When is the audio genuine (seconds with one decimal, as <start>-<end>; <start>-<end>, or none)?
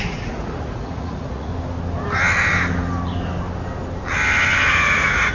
1.5-4.7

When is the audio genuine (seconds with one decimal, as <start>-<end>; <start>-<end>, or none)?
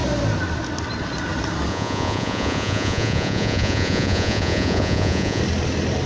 0.0-1.7; 5.4-6.1